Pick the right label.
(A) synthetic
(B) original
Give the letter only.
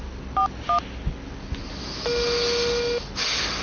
B